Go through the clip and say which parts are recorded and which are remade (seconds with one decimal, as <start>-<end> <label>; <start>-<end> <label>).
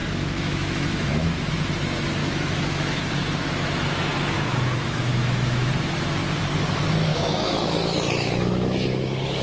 0.0-1.5 remade; 1.5-2.2 recorded; 2.2-5.7 remade; 5.7-7.1 recorded; 7.1-9.4 remade